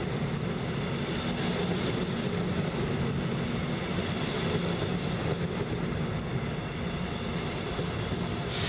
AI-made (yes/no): no